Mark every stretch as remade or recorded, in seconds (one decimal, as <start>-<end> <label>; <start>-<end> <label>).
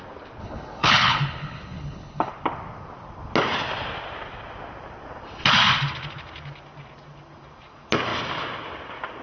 0.0-0.4 recorded; 0.4-2.3 remade; 2.3-9.2 recorded